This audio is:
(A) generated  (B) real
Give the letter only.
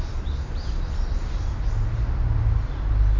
B